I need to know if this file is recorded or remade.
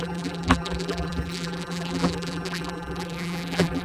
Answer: remade